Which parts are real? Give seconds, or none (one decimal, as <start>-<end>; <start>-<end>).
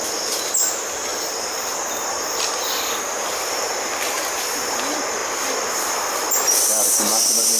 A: 0.0-7.6